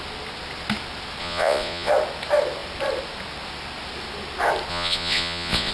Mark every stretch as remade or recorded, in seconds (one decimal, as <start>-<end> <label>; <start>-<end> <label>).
0.0-1.2 recorded; 1.2-1.9 remade; 1.9-4.7 recorded; 4.7-5.7 remade